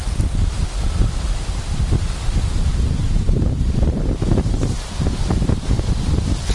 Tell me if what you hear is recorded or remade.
remade